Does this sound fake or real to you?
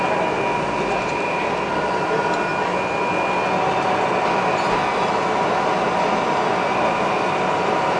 real